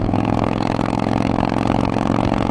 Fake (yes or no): yes